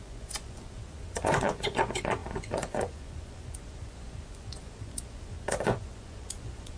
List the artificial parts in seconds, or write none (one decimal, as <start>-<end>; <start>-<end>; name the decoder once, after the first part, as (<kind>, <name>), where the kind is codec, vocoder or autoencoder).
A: 0.0-6.8 (vocoder, Vocos)